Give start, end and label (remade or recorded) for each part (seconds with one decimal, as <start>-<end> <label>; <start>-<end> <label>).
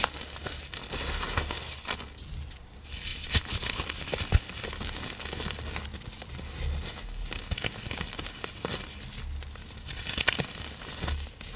0.0-11.6 recorded